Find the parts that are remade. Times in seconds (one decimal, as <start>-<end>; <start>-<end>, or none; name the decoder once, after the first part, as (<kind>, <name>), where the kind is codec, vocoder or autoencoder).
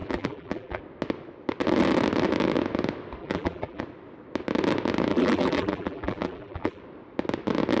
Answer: 0.0-0.8 (vocoder, BigVGAN v2); 3.2-3.8; 5.1-6.8